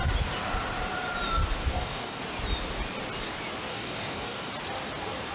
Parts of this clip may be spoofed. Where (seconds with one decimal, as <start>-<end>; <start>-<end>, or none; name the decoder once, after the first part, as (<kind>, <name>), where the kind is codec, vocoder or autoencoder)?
1.7-2.2 (codec, DAC); 3.7-4.5

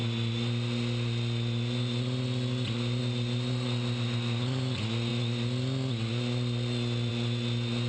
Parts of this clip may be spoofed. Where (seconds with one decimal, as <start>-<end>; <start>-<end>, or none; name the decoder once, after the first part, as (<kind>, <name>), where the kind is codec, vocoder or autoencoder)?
none